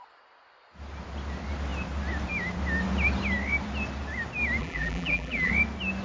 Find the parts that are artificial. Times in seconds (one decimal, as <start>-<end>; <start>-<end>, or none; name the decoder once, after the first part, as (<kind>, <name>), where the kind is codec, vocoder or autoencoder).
4.6-5.5 (vocoder, BigVGAN v2)